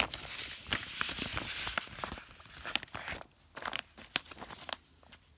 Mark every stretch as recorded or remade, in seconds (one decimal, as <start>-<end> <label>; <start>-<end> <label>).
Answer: 0.0-5.4 recorded